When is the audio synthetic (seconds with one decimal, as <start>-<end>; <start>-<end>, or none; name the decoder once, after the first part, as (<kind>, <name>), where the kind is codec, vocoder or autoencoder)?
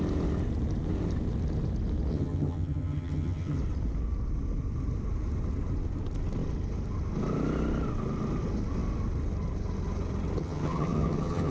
2.1-3.6 (vocoder, HiFi-GAN); 10.4-11.5